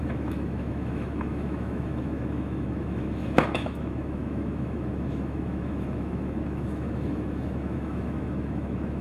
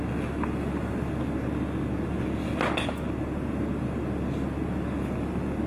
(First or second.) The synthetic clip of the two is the first